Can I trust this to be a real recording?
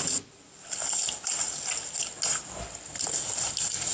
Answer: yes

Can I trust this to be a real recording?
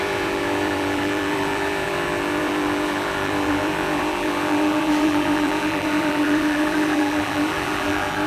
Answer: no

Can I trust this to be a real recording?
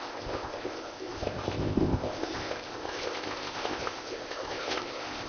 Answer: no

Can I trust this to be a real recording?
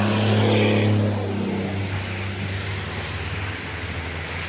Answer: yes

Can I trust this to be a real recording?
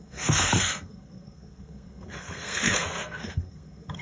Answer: no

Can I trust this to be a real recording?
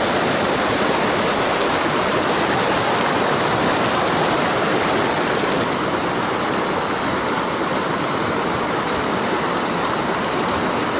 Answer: yes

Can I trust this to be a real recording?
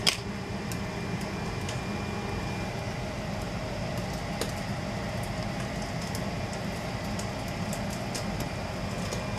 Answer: yes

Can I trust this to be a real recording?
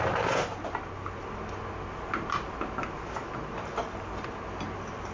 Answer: yes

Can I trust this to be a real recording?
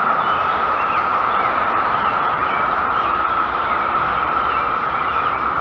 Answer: no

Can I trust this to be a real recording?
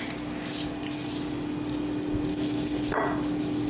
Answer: yes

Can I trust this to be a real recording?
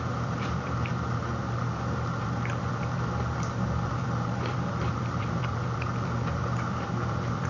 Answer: no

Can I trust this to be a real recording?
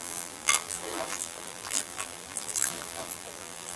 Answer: no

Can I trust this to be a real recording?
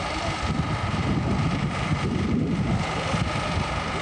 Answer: yes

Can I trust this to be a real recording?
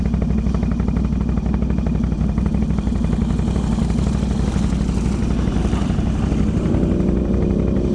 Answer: yes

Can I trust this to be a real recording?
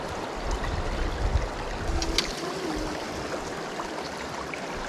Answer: yes